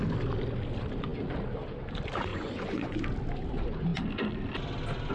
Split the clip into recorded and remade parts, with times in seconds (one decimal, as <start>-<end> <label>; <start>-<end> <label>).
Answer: 0.0-2.3 recorded; 2.3-3.0 remade; 3.0-5.1 recorded